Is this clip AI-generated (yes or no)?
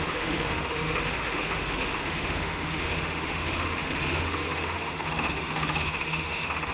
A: yes